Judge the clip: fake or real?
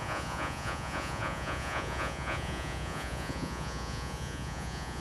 fake